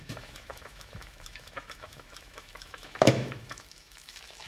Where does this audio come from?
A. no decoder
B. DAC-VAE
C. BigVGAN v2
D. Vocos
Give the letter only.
B